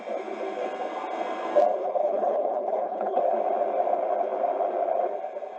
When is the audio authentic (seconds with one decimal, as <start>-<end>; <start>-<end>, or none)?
0.0-1.8; 3.2-5.6